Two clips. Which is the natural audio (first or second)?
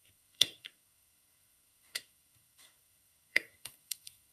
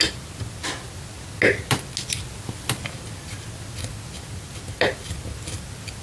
second